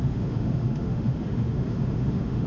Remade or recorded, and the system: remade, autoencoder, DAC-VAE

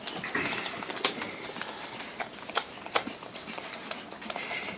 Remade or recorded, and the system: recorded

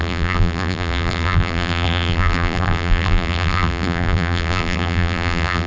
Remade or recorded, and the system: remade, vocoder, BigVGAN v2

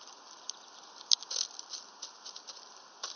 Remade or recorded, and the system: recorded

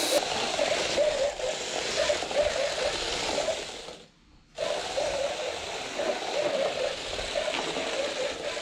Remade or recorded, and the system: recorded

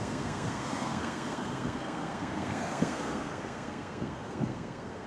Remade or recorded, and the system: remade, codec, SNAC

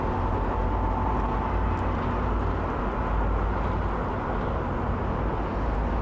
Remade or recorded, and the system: recorded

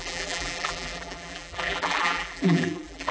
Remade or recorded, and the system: remade, vocoder, BigVGAN v2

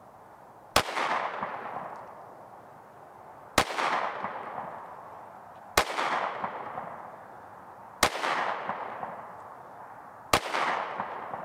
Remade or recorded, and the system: recorded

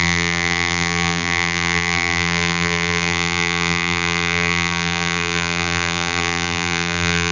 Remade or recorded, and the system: remade, vocoder, BigVGAN v2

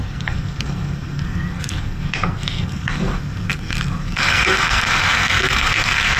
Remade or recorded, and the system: remade, codec, SNAC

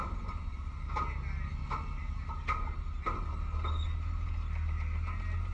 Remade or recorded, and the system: recorded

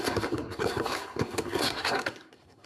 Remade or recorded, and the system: remade, codec, SNAC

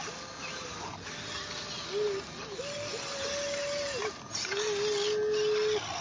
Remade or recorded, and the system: recorded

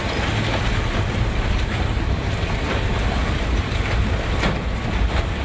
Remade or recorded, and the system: recorded